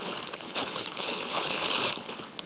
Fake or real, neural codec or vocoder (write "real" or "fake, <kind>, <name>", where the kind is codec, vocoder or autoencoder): fake, codec, HILCodec